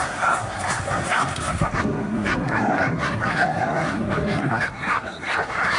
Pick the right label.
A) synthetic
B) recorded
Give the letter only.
A